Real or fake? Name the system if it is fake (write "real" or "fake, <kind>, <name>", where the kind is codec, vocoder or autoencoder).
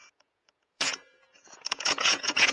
fake, vocoder, Vocos